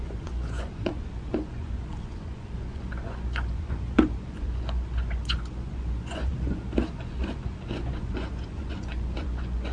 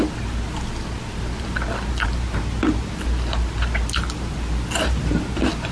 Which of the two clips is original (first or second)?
second